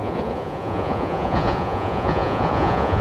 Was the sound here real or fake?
fake